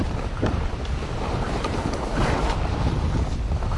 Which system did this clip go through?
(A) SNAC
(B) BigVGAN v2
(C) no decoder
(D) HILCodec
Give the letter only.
C